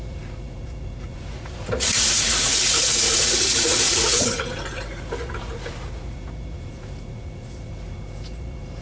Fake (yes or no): yes